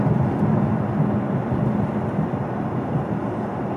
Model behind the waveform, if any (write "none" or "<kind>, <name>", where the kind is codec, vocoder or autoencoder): none